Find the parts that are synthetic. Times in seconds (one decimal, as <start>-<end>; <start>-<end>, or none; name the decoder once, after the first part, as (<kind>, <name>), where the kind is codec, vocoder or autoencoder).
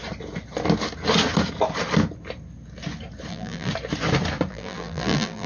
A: 3.3-3.7 (vocoder, BigVGAN v2); 4.5-5.5